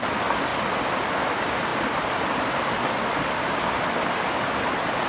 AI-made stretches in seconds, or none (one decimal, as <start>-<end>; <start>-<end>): none